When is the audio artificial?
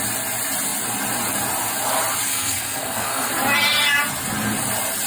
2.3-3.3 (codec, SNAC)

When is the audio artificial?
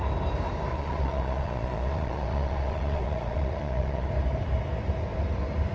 0.7-4.1 (vocoder, Vocos)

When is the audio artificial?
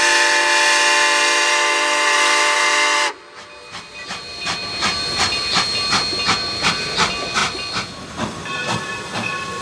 none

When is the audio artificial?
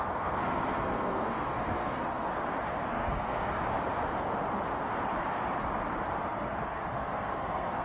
0.0-2.3 (codec, SNAC); 2.9-3.6; 6.2-7.8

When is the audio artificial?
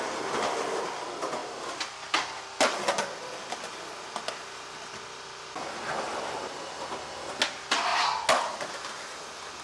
none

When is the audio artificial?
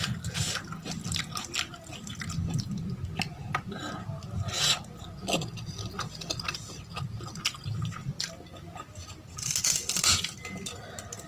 none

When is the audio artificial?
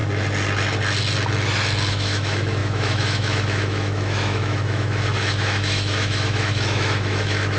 1.9-7.6 (autoencoder, DAC-VAE)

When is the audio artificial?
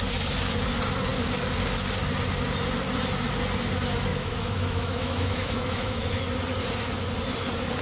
4.1-6.2 (autoencoder, DAC-VAE)